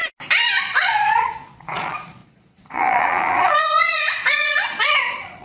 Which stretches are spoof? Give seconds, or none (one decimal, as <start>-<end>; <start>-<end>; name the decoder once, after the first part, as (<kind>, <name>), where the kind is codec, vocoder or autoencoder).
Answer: 0.6-5.4 (vocoder, Vocos)